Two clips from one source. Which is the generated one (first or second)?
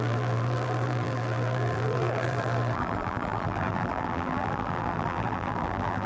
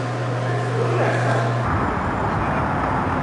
first